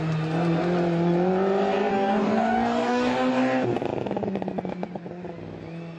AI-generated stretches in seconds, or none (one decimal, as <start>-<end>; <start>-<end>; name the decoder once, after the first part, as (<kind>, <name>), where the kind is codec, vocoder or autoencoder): 1.9-3.3 (codec, DAC)